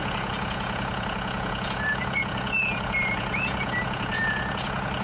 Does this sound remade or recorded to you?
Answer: remade